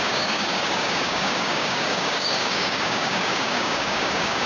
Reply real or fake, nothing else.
fake